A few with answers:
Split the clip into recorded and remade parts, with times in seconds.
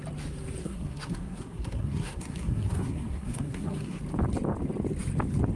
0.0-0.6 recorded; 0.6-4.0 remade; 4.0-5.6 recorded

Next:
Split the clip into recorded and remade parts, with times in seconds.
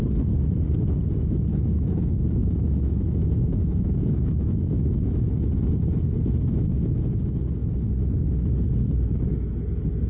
0.0-1.5 recorded; 1.5-5.3 remade; 5.3-10.1 recorded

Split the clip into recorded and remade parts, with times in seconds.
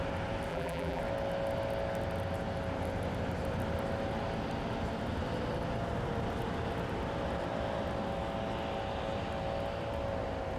0.0-0.5 recorded; 0.5-1.0 remade; 1.0-10.6 recorded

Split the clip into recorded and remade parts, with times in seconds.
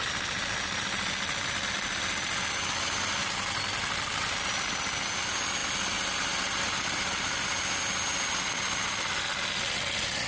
0.0-10.3 recorded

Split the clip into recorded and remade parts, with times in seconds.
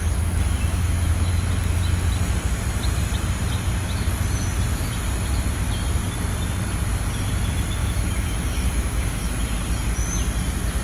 0.0-0.7 recorded; 0.7-1.3 remade; 1.3-7.8 recorded; 7.8-9.3 remade; 9.3-10.8 recorded